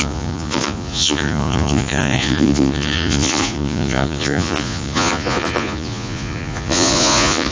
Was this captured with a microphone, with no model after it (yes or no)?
no